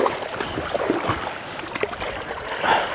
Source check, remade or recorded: recorded